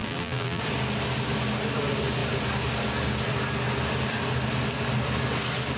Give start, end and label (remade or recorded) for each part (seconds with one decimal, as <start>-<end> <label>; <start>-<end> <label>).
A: 0.0-0.6 remade; 0.6-5.8 recorded

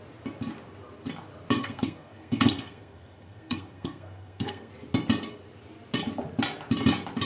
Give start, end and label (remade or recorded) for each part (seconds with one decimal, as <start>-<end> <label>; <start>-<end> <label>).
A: 0.0-1.6 recorded; 1.6-4.7 remade; 4.7-7.3 recorded

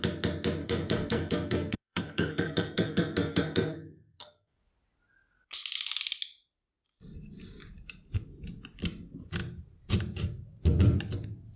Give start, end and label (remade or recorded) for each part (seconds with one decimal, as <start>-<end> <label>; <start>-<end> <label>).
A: 0.0-0.6 recorded; 0.6-4.6 remade; 4.6-11.6 recorded

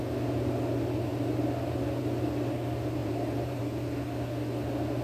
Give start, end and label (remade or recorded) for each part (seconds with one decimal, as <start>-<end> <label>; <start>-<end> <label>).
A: 0.0-3.0 recorded; 3.0-3.6 remade; 3.6-5.0 recorded